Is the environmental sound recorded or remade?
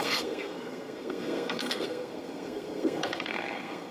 remade